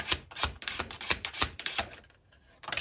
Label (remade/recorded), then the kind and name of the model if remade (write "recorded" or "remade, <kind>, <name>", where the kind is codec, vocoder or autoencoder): remade, vocoder, BigVGAN v2